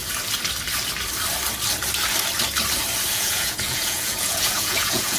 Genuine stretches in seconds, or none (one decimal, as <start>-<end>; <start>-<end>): 0.0-3.1